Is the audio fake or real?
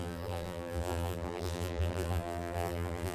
fake